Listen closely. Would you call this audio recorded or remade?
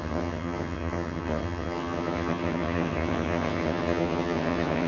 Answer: remade